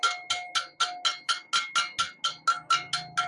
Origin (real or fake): real